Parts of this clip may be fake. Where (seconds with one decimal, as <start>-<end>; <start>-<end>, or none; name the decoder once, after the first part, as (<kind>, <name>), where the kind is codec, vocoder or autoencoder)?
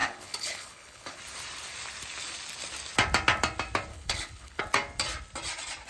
0.0-1.2 (codec, HILCodec); 3.9-4.6